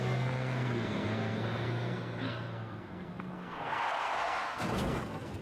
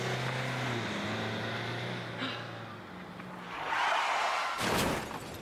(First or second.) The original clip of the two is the second